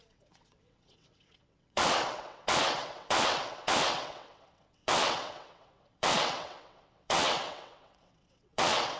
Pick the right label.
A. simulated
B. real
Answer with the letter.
A